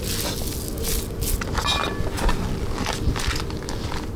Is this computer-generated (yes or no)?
no